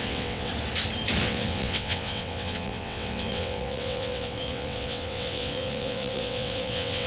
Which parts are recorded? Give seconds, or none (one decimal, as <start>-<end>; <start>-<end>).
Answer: 0.5-1.2